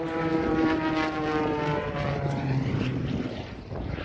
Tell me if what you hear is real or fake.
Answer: fake